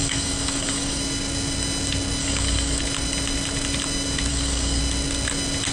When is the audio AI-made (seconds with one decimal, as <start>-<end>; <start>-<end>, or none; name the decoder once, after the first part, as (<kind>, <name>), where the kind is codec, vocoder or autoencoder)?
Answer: 0.0-1.0 (codec, DAC); 2.2-2.8; 4.3-4.8